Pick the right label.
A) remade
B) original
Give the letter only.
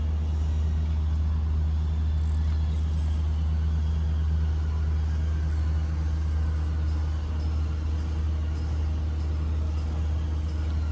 B